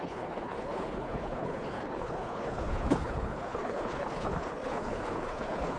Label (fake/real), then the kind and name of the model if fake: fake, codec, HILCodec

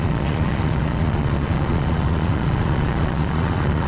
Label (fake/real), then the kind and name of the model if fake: fake, vocoder, Vocos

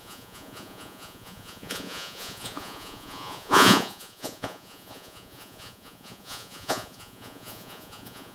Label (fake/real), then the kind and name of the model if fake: fake, vocoder, Vocos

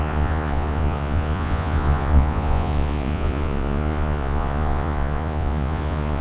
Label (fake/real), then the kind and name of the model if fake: fake, vocoder, Vocos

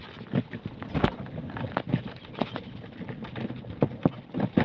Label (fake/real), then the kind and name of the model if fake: real